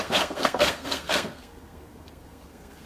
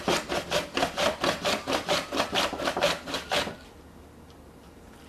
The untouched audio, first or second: second